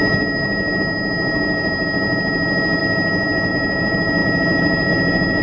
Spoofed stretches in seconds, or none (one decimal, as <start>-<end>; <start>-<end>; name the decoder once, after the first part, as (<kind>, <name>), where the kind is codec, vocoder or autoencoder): none